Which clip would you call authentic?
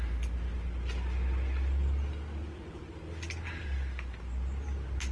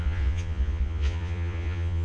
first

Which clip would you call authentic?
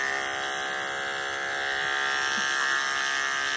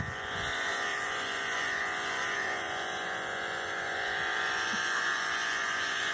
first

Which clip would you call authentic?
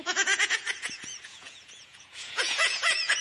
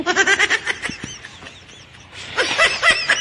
second